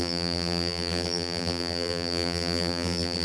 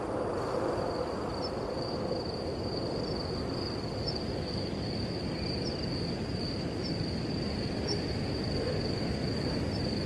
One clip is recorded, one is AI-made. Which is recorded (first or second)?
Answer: second